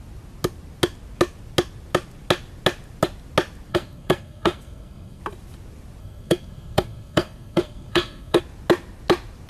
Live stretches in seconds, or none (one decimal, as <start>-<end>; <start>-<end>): 0.0-3.7; 5.2-6.0; 8.4-9.5